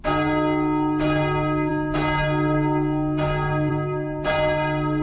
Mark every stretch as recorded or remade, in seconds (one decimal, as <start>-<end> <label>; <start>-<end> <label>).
0.0-5.0 recorded